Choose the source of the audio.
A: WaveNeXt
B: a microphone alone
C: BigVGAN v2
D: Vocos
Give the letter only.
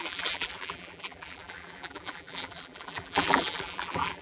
C